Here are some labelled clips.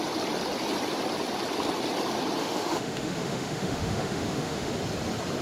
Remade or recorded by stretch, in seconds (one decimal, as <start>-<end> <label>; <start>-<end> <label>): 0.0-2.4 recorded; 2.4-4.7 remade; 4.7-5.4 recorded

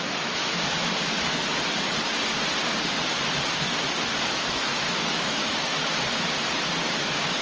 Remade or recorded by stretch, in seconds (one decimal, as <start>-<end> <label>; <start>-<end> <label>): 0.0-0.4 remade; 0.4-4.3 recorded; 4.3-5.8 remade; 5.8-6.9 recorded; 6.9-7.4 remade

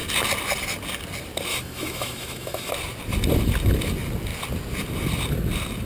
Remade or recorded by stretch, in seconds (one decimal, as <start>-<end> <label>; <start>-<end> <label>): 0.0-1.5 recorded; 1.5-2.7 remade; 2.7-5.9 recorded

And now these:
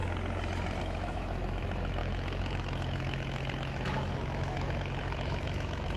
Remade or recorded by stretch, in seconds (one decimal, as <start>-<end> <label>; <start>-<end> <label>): 0.0-0.8 recorded; 0.8-6.0 remade

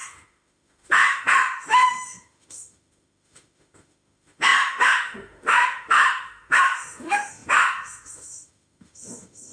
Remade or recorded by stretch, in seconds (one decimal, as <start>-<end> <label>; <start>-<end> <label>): 0.0-9.5 remade

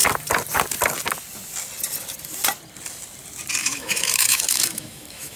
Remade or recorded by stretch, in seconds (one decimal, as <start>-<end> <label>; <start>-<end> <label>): 0.0-3.6 recorded; 3.6-5.4 remade

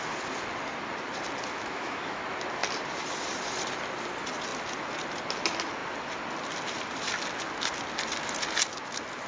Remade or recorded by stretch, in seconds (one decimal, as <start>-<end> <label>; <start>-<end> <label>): 0.0-1.5 recorded; 1.5-2.2 remade; 2.2-9.3 recorded